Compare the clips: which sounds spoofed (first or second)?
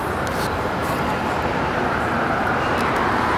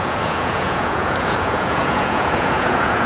second